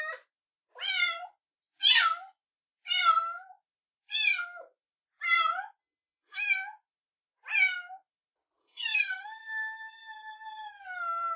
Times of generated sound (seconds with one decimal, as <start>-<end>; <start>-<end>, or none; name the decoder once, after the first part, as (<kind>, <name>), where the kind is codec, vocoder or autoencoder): 5.8-6.4 (codec, SNAC); 8.6-10.7